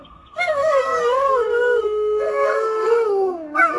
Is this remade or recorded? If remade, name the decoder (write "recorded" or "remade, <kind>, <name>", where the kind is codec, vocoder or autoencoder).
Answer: remade, codec, SNAC